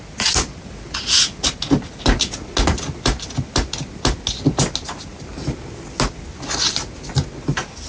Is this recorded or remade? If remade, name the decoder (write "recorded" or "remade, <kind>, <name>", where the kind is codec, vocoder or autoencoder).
recorded